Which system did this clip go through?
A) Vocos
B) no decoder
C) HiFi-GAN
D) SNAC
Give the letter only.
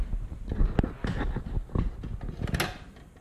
B